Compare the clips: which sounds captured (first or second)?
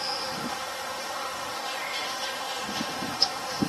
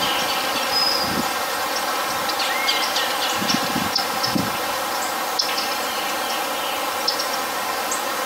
second